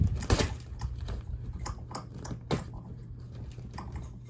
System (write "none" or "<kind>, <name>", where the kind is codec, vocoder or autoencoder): none